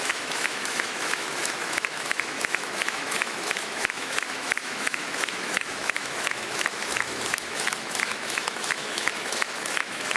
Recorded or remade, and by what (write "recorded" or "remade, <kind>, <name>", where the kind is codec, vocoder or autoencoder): remade, autoencoder, DAC-VAE